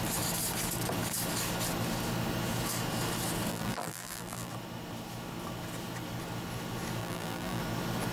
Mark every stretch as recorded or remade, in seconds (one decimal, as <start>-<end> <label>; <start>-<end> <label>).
0.0-3.5 recorded; 3.5-4.5 remade; 4.5-7.0 recorded; 7.0-7.6 remade; 7.6-8.1 recorded